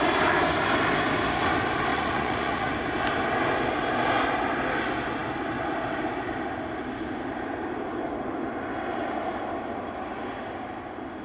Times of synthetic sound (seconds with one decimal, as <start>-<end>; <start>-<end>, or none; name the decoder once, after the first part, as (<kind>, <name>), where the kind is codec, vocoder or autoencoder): 1.9-2.7 (vocoder, Vocos)

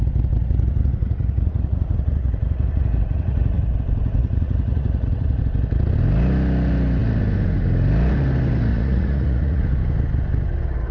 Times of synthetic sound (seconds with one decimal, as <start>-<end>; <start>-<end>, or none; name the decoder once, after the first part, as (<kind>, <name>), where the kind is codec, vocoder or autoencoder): 0.4-3.7 (vocoder, Vocos); 4.2-5.4; 8.7-9.6